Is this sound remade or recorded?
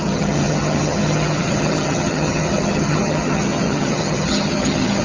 remade